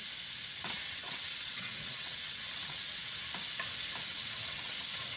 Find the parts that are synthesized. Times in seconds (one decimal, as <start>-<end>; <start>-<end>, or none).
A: 0.5-3.2; 4.1-5.2